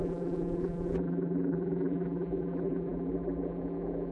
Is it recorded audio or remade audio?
remade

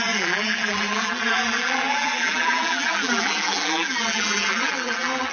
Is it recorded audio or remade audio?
remade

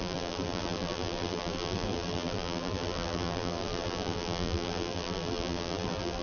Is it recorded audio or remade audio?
remade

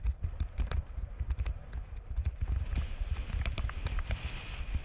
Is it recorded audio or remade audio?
remade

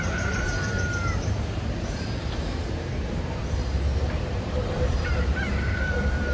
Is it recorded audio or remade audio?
remade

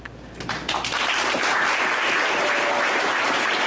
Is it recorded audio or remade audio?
remade